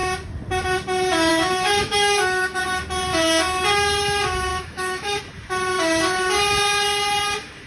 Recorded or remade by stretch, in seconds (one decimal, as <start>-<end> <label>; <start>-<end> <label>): 0.0-1.3 recorded; 1.3-2.6 remade; 2.6-4.5 recorded; 4.5-5.2 remade; 5.2-7.7 recorded